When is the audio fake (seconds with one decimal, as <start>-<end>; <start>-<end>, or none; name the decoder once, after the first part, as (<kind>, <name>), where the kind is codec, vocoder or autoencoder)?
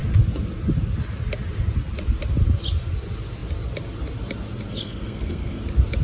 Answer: 4.7-5.6 (codec, SNAC)